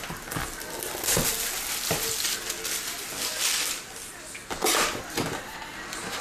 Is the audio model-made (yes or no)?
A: no